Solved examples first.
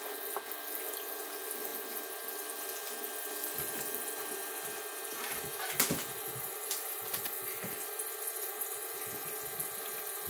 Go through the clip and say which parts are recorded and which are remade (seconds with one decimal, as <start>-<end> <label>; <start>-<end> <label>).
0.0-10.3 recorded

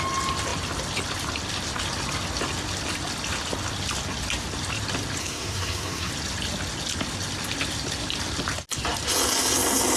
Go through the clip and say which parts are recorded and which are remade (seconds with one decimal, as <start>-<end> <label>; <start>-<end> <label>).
0.0-5.2 recorded; 5.2-6.1 remade; 6.1-10.0 recorded

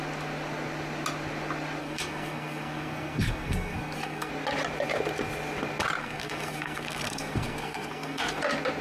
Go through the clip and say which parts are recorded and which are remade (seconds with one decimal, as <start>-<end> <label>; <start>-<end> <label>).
0.0-1.8 recorded; 1.8-4.3 remade; 4.3-6.0 recorded; 6.0-8.4 remade; 8.4-8.8 recorded

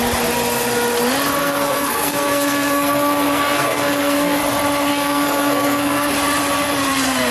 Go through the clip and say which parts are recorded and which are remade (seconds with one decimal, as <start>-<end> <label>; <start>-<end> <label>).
0.0-1.4 recorded; 1.4-4.4 remade; 4.4-4.9 recorded; 4.9-6.1 remade; 6.1-7.3 recorded

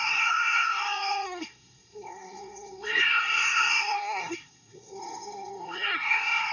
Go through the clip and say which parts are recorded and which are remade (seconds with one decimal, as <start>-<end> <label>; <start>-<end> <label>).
0.0-6.5 remade

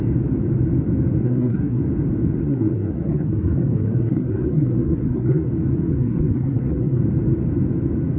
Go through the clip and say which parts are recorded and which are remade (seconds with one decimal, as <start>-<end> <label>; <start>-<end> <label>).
0.0-1.2 recorded; 1.2-1.8 remade; 1.8-2.4 recorded; 2.4-5.5 remade; 5.5-5.9 recorded; 5.9-7.0 remade; 7.0-8.2 recorded